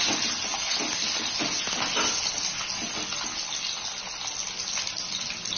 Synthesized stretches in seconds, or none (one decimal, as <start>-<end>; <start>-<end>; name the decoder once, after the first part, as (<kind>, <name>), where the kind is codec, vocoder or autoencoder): none